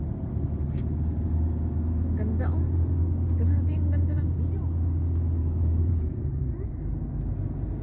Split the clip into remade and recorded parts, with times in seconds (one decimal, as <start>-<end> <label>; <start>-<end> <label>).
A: 0.0-5.4 recorded; 5.4-6.4 remade; 6.4-7.8 recorded